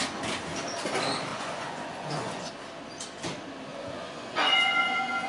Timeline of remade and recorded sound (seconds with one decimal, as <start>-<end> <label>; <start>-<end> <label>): 0.0-1.3 recorded; 1.3-2.5 remade; 2.5-3.7 recorded; 3.7-5.3 remade